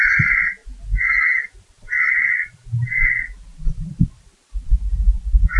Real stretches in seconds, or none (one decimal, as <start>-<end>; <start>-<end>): 0.0-5.6

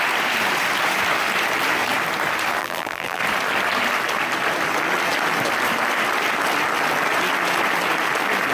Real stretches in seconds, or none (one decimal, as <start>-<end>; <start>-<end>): 0.0-2.6; 3.2-8.5

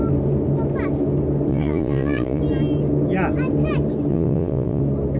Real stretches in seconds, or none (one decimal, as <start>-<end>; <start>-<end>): 0.0-1.5; 2.4-4.1; 4.8-5.2